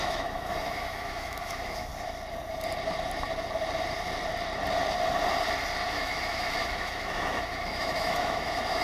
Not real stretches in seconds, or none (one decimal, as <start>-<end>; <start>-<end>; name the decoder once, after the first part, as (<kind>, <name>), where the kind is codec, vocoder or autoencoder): 0.0-1.9 (autoencoder, DAC-VAE); 5.9-8.8